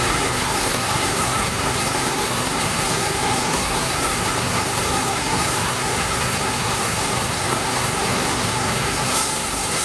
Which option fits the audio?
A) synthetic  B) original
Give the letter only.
A